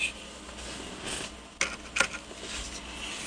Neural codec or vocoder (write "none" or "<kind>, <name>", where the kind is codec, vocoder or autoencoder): none